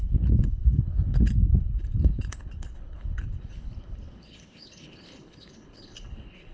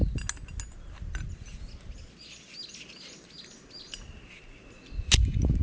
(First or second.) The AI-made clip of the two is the first